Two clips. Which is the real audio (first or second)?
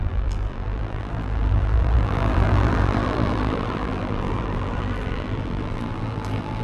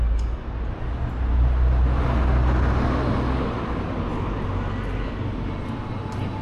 second